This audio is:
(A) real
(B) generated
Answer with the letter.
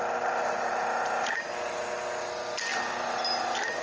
A